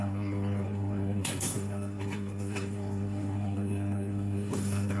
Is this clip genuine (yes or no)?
no